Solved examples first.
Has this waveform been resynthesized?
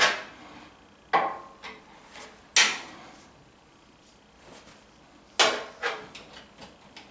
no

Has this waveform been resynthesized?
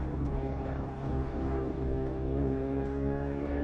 yes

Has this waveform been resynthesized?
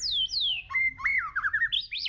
no